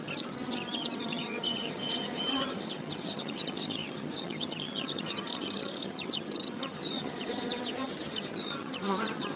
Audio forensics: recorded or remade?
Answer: remade